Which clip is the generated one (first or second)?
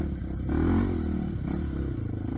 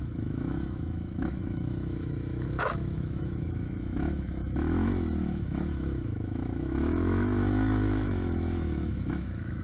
second